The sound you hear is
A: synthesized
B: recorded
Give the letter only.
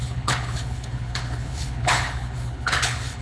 A